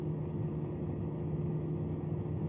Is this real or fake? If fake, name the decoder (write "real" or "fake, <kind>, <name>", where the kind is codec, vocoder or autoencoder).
real